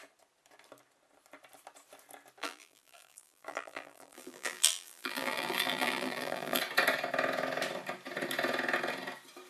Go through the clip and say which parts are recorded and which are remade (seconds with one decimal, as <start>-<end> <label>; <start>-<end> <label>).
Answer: 0.0-2.4 recorded; 2.4-6.6 remade; 6.6-9.5 recorded